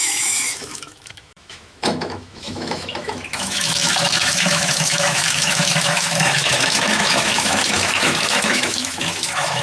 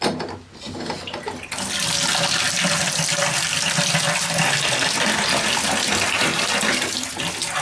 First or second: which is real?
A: second